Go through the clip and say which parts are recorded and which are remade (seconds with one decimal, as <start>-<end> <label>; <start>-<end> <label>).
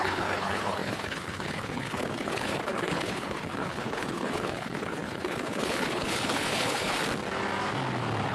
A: 0.0-7.0 remade; 7.0-8.3 recorded